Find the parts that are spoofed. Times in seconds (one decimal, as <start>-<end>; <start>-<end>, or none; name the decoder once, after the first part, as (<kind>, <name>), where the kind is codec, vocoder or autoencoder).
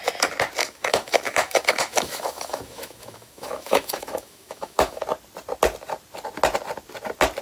0.6-5.0 (autoencoder, DAC-VAE)